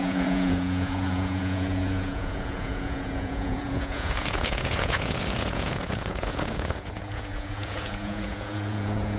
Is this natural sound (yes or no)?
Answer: no